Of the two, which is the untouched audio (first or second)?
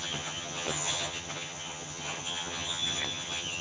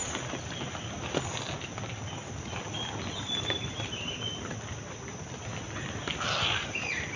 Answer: second